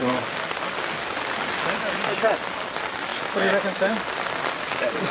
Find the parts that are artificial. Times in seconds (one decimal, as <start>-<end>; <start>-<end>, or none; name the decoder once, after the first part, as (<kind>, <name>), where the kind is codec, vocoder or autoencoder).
none